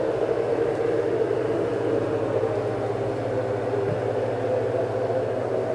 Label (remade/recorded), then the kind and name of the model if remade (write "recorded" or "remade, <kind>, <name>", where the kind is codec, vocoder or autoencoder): recorded